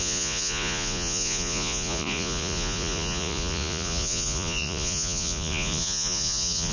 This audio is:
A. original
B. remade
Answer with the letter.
B